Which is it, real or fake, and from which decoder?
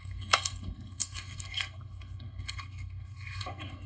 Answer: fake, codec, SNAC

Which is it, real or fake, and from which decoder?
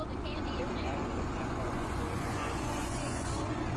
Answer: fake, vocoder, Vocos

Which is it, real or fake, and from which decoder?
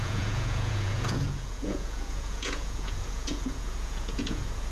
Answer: fake, vocoder, Vocos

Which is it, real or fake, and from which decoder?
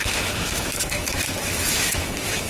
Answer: fake, autoencoder, DAC-VAE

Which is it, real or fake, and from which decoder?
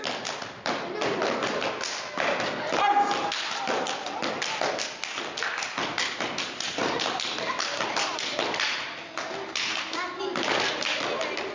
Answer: real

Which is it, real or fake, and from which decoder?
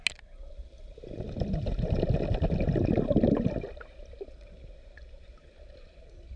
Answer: real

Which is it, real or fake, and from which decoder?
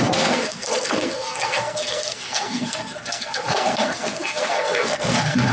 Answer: fake, codec, SNAC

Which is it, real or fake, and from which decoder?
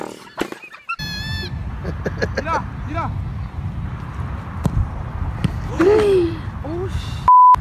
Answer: real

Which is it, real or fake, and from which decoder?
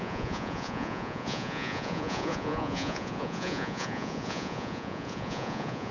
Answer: fake, vocoder, Vocos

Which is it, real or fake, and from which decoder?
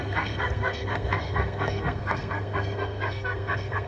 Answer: fake, codec, SNAC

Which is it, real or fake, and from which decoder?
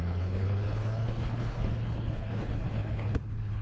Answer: fake, codec, HILCodec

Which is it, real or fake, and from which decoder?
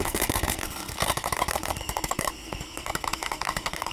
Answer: fake, codec, SNAC